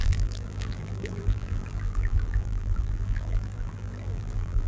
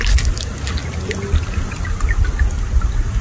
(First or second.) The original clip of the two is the second